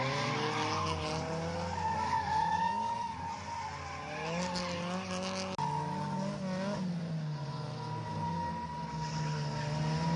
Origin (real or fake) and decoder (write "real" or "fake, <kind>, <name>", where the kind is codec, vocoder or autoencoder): real